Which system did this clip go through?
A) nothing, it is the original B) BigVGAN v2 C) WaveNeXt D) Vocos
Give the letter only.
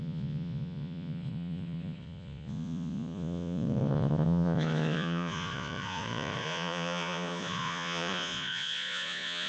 D